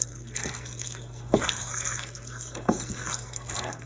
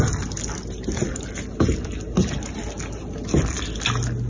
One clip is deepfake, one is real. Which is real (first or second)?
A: second